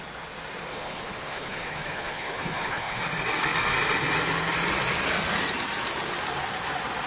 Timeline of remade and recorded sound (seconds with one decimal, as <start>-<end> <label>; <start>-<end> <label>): 0.0-0.7 recorded; 0.7-3.0 remade; 3.0-7.1 recorded